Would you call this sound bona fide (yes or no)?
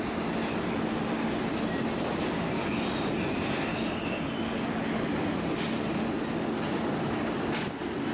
yes